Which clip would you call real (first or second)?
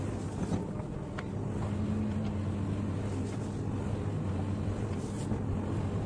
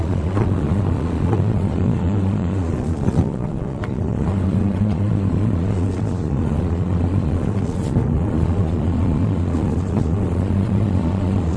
first